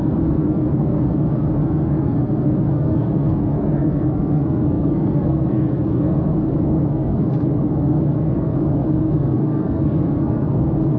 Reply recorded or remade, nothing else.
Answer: remade